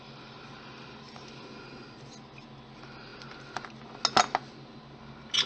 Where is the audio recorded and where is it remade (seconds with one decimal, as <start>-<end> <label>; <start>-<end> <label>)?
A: 0.0-5.5 recorded